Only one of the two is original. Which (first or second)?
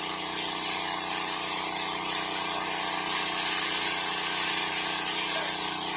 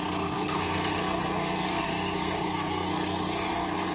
first